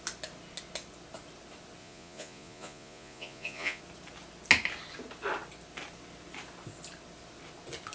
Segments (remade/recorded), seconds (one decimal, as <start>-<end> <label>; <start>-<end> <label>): 0.0-1.8 recorded; 1.8-3.8 remade; 3.8-7.9 recorded